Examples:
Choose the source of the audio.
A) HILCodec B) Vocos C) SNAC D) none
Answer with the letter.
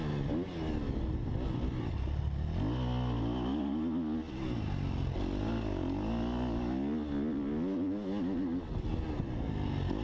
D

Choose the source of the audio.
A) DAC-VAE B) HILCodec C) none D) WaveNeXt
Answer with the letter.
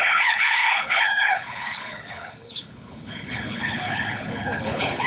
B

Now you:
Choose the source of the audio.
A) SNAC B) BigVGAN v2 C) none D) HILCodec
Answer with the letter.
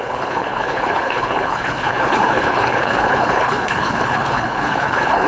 D